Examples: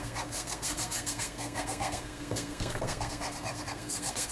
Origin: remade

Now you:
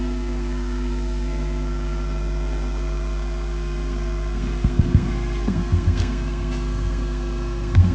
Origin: remade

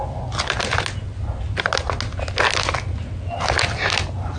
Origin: recorded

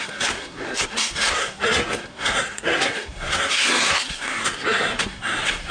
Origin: remade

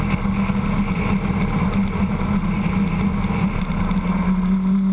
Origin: recorded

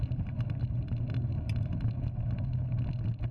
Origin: recorded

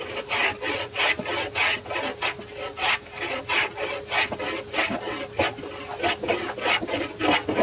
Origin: recorded